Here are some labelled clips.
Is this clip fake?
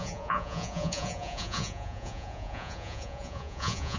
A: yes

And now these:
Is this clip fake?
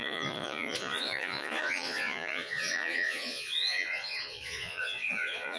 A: yes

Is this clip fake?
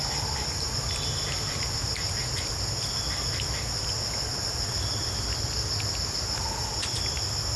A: no